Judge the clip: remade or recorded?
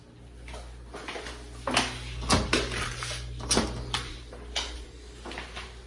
recorded